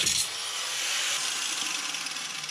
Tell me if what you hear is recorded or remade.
recorded